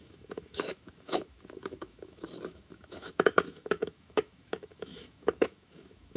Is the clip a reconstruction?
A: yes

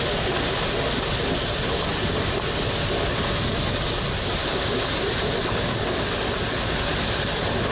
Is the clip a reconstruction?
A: no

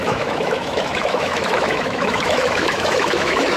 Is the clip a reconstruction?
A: yes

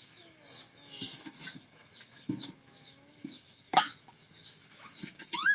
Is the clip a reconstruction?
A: yes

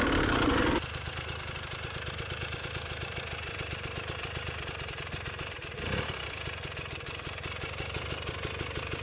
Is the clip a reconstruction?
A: no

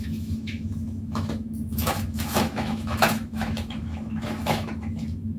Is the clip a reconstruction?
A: yes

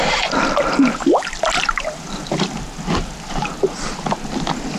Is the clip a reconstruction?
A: no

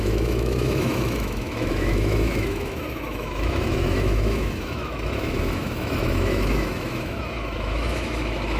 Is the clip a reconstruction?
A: yes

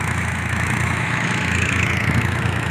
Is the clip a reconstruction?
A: yes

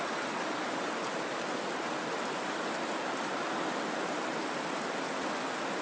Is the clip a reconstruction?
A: no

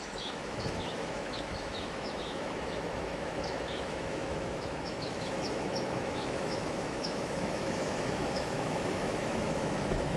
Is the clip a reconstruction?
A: yes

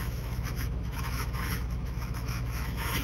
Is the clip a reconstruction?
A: yes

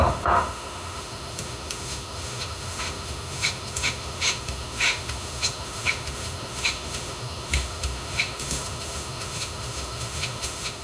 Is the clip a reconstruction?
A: yes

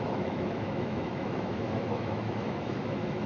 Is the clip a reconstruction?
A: yes